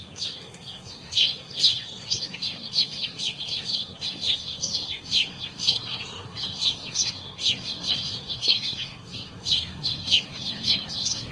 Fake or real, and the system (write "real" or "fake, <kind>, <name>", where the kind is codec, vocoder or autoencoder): fake, codec, SNAC